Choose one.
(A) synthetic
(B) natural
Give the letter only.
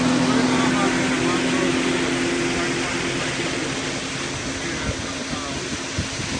B